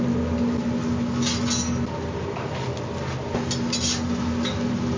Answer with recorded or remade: recorded